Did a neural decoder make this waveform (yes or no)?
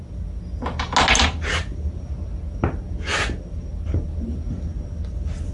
no